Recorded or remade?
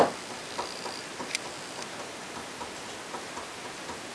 recorded